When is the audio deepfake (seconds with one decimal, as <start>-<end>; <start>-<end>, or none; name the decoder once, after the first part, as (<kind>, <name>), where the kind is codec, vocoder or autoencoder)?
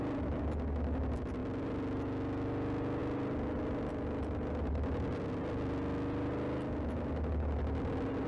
none